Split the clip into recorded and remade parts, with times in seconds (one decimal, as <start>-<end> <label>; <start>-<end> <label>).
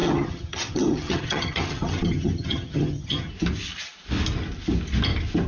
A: 0.0-3.3 remade; 3.3-5.5 recorded